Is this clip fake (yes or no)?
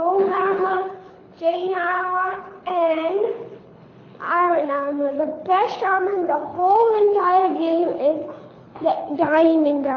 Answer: yes